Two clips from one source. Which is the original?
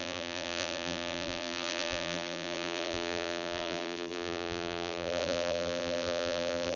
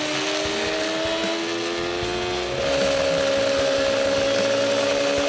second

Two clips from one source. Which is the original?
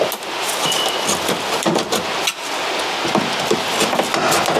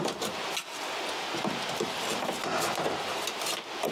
first